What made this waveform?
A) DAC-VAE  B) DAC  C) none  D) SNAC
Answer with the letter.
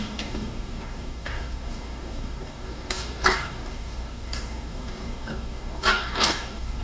B